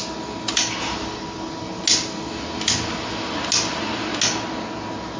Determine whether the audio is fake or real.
real